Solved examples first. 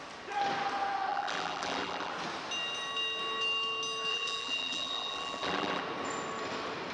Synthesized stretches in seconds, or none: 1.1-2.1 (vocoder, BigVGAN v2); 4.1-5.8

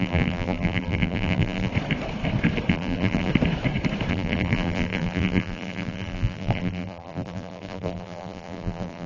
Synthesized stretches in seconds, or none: 0.0-1.7 (vocoder, BigVGAN v2); 2.7-3.3; 4.1-9.1

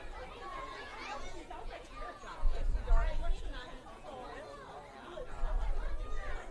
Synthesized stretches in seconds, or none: 0.5-4.4 (vocoder, Vocos)

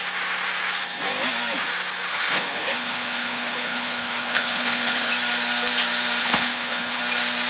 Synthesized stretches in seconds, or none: 2.1-5.1 (codec, HILCodec); 6.2-7.0